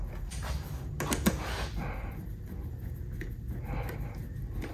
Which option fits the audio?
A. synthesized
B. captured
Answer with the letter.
B